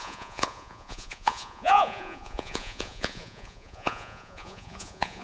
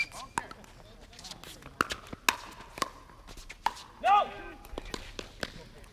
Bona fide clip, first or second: second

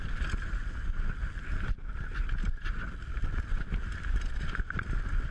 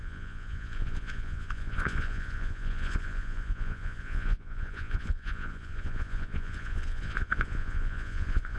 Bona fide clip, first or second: first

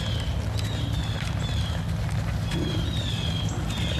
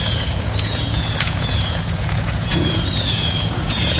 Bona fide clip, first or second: first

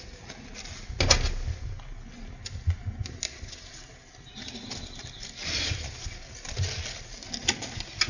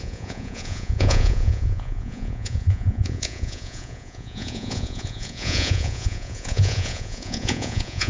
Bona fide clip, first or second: first